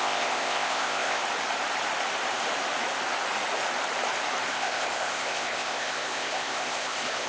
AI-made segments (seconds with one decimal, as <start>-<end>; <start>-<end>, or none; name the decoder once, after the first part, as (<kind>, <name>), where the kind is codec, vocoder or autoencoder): 0.0-1.2 (codec, ZipCodec); 4.5-7.3